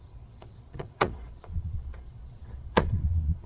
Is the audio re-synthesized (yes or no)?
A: yes